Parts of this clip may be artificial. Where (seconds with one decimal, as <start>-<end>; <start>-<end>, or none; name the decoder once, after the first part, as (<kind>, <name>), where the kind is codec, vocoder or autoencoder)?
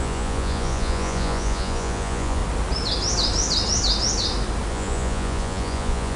0.0-2.4 (vocoder, Vocos); 4.7-6.2